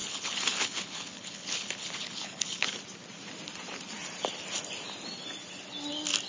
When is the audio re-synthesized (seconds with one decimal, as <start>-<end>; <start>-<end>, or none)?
0.0-2.7